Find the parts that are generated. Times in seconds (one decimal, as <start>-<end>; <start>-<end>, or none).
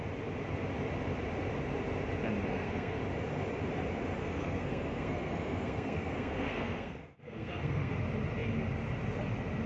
2.5-3.0; 4.2-7.9